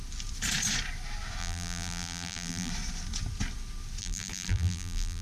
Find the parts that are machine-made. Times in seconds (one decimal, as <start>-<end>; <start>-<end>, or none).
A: 1.4-2.7; 4.0-5.2